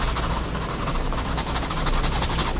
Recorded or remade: recorded